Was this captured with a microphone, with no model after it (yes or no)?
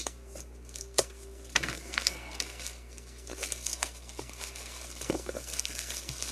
no